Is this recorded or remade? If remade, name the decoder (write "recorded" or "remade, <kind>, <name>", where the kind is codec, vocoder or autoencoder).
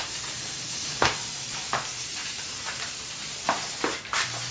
remade, vocoder, BigVGAN v2